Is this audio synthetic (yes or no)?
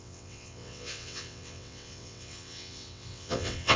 yes